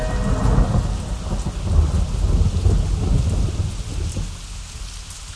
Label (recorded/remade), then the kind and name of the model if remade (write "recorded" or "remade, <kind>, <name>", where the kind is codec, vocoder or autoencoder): recorded